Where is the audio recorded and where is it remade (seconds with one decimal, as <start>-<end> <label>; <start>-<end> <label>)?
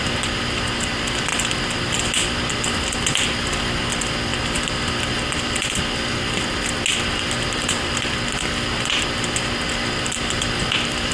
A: 0.0-11.1 recorded